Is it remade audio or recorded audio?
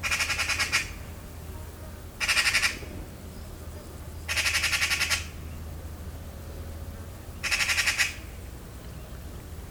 recorded